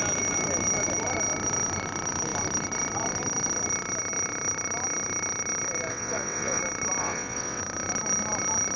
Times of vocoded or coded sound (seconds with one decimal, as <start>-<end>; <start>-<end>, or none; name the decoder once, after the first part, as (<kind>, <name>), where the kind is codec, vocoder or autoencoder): 5.9-6.6 (vocoder, WaveNeXt); 7.0-7.6